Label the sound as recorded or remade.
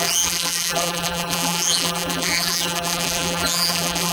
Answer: remade